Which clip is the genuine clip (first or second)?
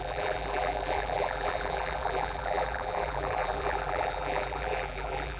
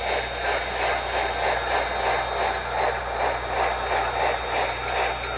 second